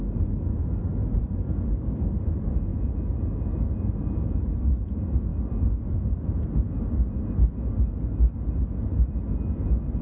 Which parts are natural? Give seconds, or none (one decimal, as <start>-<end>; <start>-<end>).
0.0-10.0